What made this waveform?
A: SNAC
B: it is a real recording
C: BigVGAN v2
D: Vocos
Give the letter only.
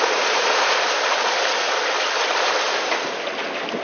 B